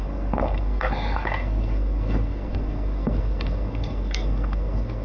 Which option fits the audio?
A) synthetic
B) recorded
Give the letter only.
A